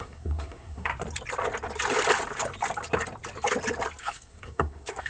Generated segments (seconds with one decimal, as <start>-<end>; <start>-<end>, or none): 0.0-0.9; 4.0-5.1